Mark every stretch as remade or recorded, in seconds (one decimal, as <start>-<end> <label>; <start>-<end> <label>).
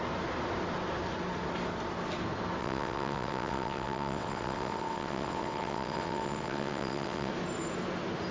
0.0-2.6 recorded; 2.6-7.3 remade; 7.3-8.3 recorded